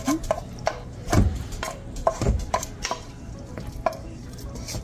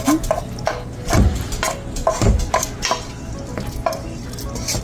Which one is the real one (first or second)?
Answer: second